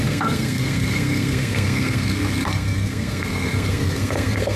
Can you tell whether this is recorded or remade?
remade